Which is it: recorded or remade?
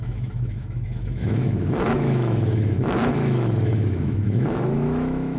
remade